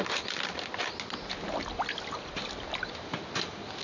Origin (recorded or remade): recorded